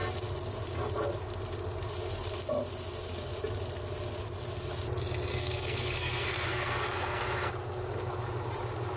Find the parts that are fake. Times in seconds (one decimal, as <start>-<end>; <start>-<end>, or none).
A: 5.3-7.5